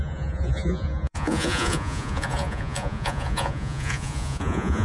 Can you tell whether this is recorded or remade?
remade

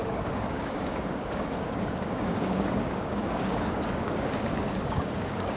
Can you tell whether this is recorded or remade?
remade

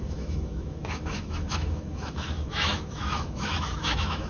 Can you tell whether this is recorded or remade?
remade